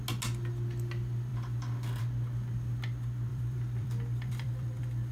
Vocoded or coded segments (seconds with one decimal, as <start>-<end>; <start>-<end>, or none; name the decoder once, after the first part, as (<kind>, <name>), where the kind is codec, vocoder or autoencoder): 3.3-5.1 (vocoder, BigVGAN v2)